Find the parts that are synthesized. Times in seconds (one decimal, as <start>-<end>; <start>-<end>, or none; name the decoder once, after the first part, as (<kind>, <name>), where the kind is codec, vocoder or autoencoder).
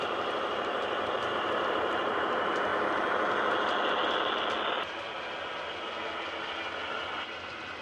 0.0-2.7 (vocoder, BigVGAN v2)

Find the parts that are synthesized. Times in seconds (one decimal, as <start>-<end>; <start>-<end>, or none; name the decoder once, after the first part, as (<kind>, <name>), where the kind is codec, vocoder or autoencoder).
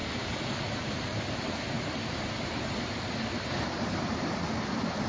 0.0-3.1 (vocoder, BigVGAN v2)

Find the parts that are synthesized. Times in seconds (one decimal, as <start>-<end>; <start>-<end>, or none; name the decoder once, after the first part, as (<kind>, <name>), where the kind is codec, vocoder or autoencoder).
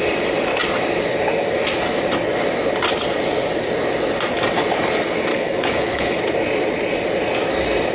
5.3-6.2 (codec, HILCodec)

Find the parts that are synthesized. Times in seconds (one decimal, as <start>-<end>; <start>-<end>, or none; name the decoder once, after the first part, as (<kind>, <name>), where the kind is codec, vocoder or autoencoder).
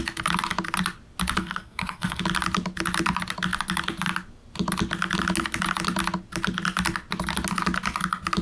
1.4-2.2 (codec, SNAC)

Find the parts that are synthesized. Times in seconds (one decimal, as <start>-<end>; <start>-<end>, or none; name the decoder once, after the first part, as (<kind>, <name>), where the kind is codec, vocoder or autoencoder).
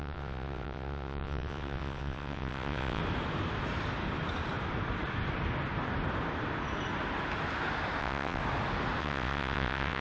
0.0-3.0 (vocoder, WaveNeXt); 8.0-8.4; 9.0-10.0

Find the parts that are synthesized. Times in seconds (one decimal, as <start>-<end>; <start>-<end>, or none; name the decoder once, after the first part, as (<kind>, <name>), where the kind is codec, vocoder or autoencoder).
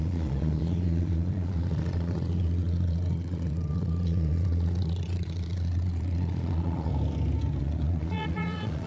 0.0-6.9 (vocoder, Vocos); 7.6-8.9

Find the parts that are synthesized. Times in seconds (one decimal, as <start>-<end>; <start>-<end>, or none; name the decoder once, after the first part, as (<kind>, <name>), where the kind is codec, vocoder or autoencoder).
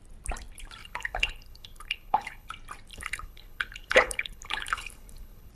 0.8-2.5 (codec, HILCodec); 2.9-5.5